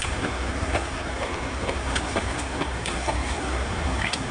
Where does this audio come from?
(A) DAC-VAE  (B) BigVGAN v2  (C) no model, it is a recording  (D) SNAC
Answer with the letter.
D